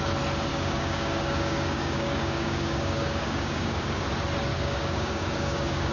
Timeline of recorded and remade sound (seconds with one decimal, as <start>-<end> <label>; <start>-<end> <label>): 0.0-0.5 recorded; 0.5-4.0 remade; 4.0-4.5 recorded; 4.5-5.9 remade